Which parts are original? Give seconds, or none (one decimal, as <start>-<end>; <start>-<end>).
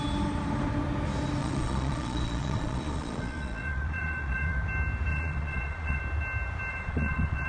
0.0-1.4; 4.6-5.1; 6.0-6.7